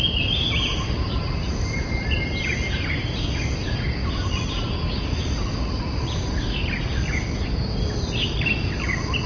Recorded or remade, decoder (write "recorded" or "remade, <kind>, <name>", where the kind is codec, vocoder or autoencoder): recorded